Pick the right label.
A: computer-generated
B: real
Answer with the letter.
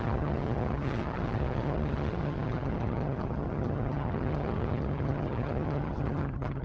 A